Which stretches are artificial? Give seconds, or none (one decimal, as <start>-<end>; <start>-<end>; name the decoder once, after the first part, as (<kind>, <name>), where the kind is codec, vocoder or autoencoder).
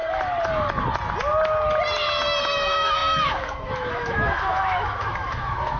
2.4-5.8 (autoencoder, DAC-VAE)